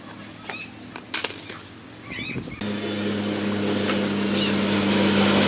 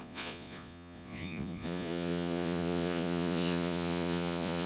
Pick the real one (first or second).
first